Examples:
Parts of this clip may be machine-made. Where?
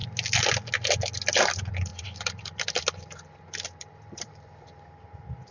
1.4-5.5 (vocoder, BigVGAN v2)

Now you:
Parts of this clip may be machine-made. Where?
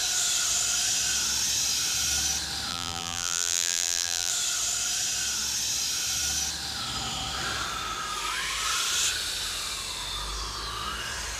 2.7-4.3 (vocoder, BigVGAN v2)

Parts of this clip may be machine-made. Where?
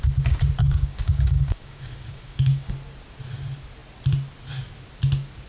0.6-2.7 (codec, DAC)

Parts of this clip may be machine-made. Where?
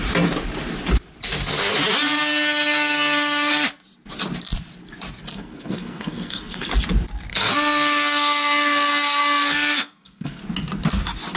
5.3-6.7 (codec, SNAC); 7.3-10.4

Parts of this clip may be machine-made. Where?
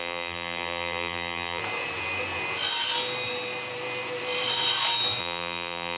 0.0-1.6 (vocoder, BigVGAN v2); 5.2-6.0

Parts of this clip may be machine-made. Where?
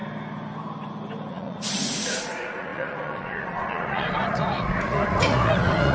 1.3-5.9 (vocoder, Vocos)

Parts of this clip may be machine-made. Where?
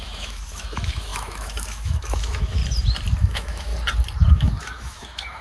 0.0-2.6 (autoencoder, DAC-VAE); 3.2-3.7; 4.3-5.4